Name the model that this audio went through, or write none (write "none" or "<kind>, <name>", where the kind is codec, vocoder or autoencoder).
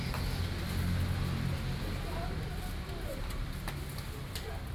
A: none